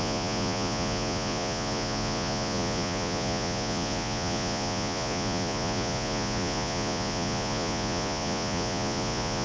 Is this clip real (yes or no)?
no